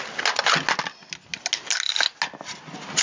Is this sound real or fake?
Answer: real